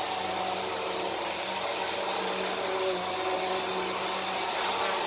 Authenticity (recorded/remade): recorded